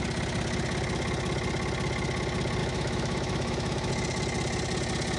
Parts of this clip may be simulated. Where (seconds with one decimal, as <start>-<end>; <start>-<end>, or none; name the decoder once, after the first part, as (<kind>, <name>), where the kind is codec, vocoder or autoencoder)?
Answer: 2.6-3.9 (autoencoder, DAC-VAE)